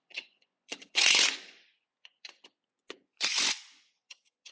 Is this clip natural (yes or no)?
no